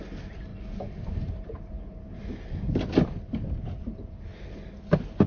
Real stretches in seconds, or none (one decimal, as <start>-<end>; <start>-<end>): 0.0-0.5; 2.3-5.3